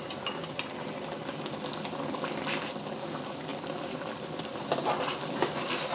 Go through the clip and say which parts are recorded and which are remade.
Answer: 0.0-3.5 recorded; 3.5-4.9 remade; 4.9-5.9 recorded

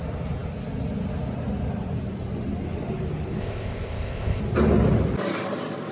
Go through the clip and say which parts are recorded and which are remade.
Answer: 0.0-3.4 recorded; 3.4-4.4 remade; 4.4-5.9 recorded

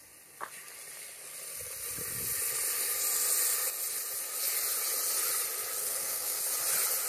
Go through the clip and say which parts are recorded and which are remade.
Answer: 0.0-5.8 recorded; 5.8-6.4 remade; 6.4-7.1 recorded

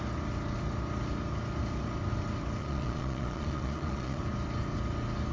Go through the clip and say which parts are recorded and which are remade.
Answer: 0.0-2.6 recorded; 2.6-4.2 remade; 4.2-5.3 recorded